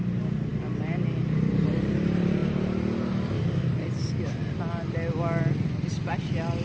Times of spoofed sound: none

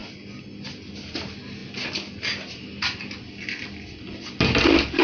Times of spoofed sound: none

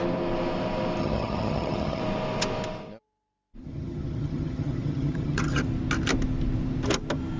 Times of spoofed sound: 1.0-2.0 (vocoder, HiFi-GAN); 3.6-5.6